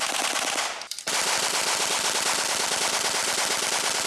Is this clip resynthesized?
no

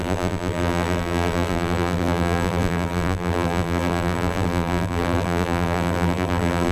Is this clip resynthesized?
yes